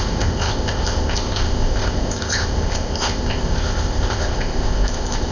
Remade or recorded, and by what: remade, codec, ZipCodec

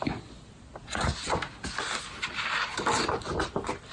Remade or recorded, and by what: recorded